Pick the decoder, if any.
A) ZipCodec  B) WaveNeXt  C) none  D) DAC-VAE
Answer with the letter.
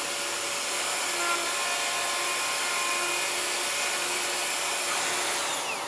C